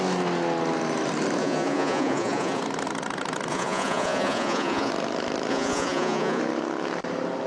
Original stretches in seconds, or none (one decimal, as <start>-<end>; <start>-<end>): 0.0-1.4; 2.6-3.5; 4.9-5.5; 6.4-7.5